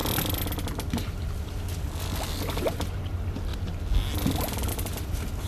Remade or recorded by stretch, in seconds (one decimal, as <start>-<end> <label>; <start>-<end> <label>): 0.0-5.5 recorded